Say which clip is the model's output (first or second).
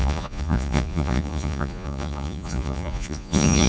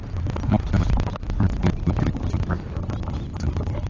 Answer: first